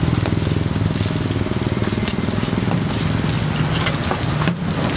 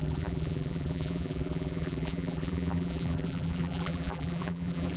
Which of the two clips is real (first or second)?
first